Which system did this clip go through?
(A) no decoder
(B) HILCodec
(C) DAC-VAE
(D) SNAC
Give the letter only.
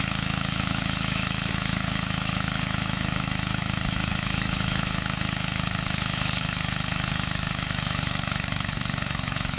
C